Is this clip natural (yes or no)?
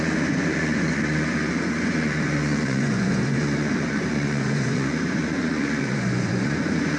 no